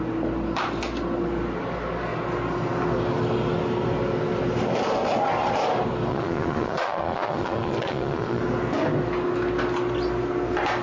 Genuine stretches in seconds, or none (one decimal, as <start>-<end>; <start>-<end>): 0.0-6.1; 8.4-10.8